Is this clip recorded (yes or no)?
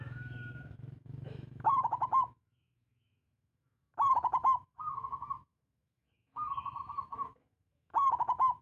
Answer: no